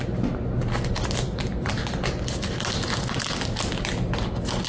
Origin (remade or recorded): recorded